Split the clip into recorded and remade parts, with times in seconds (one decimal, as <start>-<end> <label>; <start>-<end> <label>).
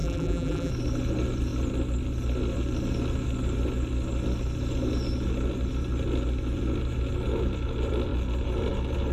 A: 0.0-0.7 remade; 0.7-9.1 recorded